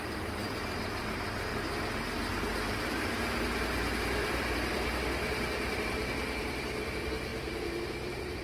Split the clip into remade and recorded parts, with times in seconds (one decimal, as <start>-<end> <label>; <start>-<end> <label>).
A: 0.0-1.5 remade; 1.5-2.3 recorded; 2.3-8.4 remade